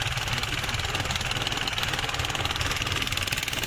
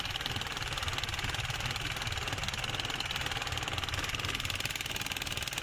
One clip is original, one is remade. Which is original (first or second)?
first